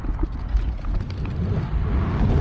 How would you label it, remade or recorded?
recorded